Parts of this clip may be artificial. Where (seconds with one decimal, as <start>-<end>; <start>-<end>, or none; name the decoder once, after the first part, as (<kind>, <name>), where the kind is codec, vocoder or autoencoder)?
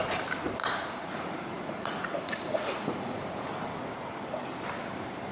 0.6-3.8 (vocoder, Vocos)